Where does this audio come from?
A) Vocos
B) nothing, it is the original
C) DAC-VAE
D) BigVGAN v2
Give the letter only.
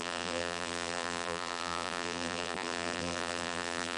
D